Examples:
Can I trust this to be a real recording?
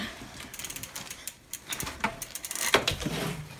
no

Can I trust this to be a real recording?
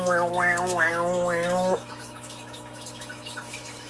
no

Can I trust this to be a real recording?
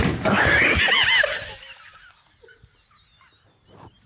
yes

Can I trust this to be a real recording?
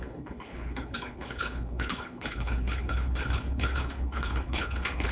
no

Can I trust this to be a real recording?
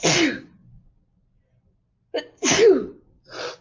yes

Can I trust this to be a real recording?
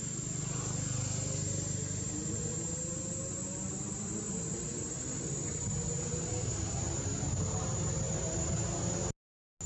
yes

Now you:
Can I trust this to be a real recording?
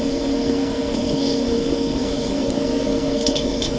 no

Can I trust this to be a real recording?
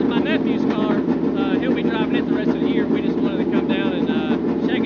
yes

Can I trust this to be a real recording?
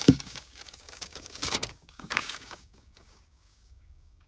no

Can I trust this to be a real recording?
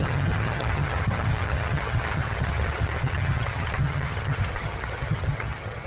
no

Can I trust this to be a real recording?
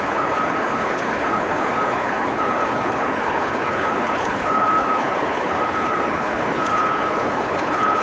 no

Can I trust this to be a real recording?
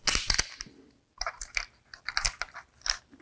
yes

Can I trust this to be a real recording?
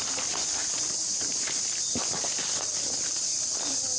no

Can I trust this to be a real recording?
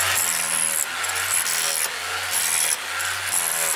yes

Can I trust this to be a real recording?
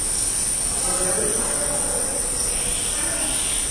yes